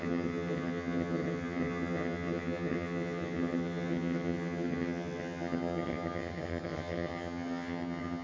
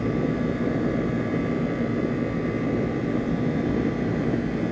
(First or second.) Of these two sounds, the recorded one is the second